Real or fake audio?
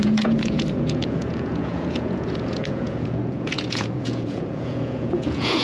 fake